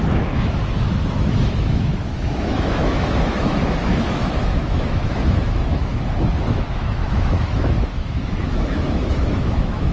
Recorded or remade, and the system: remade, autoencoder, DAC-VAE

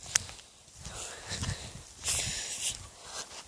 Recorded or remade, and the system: recorded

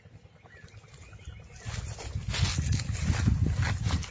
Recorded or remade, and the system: recorded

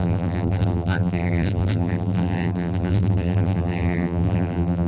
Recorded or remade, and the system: remade, vocoder, BigVGAN v2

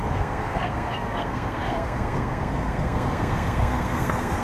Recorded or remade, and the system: remade, codec, SNAC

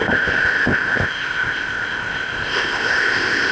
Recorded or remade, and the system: remade, codec, ZipCodec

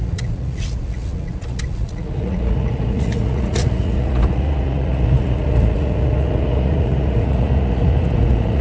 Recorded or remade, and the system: remade, vocoder, Vocos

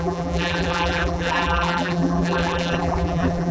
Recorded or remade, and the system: remade, vocoder, BigVGAN v2